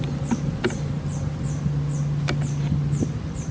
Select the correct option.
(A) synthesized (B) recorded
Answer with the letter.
B